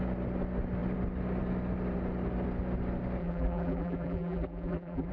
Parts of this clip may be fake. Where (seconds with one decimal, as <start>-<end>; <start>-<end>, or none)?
3.2-5.1